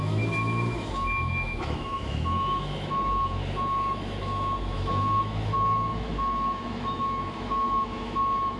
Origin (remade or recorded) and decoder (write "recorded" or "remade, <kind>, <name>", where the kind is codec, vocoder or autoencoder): remade, autoencoder, DAC-VAE